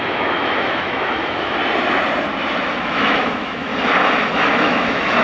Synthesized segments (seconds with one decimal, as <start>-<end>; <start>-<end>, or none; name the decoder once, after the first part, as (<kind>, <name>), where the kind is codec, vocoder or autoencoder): 0.0-1.6 (autoencoder, DAC-VAE); 2.7-3.7; 4.3-5.2